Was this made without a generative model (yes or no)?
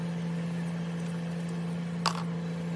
yes